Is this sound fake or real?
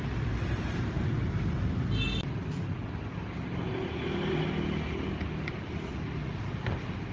real